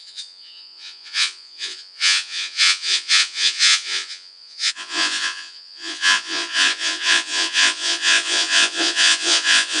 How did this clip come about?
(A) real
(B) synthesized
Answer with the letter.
B